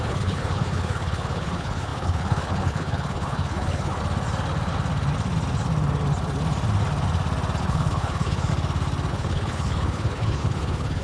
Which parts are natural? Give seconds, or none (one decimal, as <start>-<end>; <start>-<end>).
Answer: 4.0-7.6; 8.5-9.1